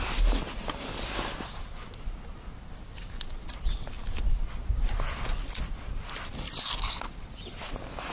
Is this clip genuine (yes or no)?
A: yes